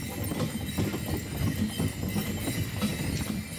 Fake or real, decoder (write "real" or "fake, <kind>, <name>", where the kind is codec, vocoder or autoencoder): real